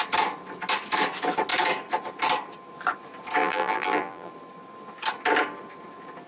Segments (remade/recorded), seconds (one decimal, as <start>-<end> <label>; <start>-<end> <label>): 0.0-3.4 recorded; 3.4-4.3 remade; 4.3-6.3 recorded